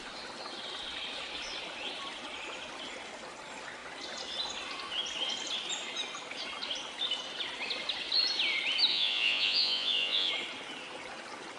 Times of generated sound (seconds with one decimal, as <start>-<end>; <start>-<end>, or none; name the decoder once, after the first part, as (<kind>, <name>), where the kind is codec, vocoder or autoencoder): 8.9-10.3 (vocoder, Vocos)